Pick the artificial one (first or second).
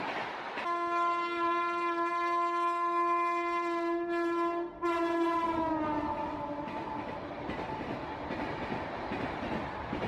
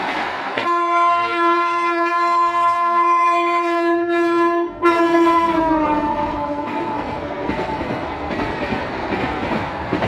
second